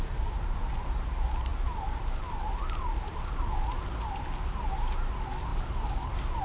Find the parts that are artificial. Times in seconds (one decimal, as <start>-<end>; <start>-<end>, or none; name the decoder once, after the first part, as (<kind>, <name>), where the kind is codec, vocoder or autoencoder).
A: none